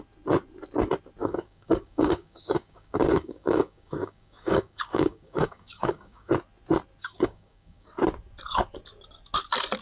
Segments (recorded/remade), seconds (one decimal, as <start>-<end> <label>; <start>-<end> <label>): 0.0-1.2 recorded; 1.2-6.3 remade; 6.3-7.0 recorded; 7.0-7.9 remade; 7.9-9.8 recorded